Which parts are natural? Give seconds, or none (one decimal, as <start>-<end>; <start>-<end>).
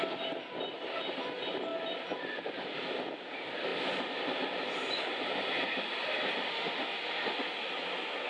0.0-6.5; 7.7-8.3